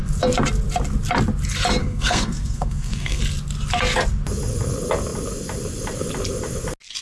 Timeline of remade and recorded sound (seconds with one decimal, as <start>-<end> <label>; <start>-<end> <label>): 0.0-1.8 recorded; 1.8-3.2 remade; 3.2-7.0 recorded